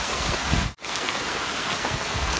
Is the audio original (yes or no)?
no